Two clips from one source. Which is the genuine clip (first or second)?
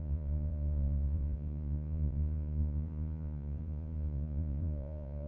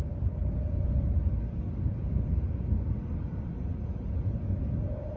second